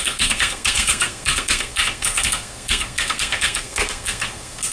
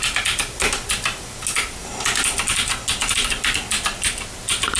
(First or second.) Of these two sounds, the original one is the second